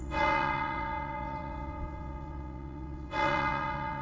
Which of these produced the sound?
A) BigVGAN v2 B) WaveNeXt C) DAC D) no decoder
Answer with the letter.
B